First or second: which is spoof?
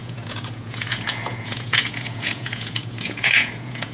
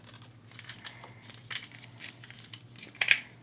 first